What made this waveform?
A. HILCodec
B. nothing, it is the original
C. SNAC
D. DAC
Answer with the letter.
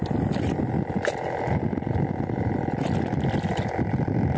B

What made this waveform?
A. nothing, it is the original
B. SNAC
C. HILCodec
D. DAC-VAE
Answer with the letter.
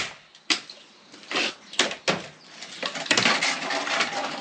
A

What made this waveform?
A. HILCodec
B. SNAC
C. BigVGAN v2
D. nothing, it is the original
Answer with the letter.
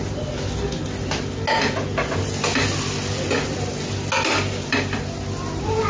D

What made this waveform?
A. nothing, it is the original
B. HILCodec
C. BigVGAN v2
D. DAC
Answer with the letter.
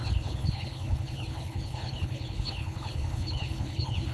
B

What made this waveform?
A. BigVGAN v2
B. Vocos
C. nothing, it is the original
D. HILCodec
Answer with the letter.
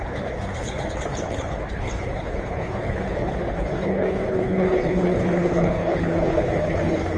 D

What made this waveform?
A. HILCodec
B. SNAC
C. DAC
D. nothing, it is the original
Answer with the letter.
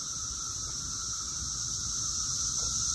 D